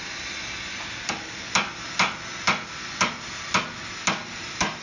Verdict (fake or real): real